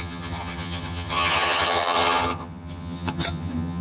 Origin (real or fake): fake